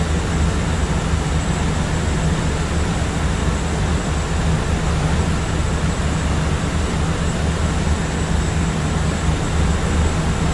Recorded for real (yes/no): yes